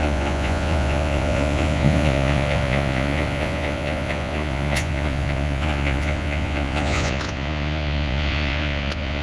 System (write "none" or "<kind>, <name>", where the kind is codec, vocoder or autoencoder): vocoder, Vocos